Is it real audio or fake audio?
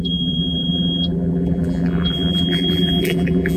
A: fake